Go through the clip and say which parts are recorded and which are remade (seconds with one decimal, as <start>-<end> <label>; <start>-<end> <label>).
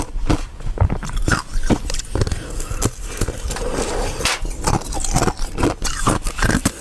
0.0-6.8 recorded